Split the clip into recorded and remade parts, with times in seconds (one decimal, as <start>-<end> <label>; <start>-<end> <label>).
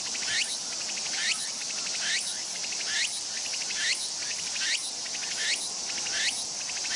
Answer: 0.0-7.0 recorded